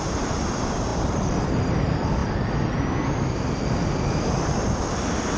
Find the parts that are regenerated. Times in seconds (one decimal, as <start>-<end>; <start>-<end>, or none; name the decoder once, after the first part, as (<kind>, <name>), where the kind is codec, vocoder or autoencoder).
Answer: none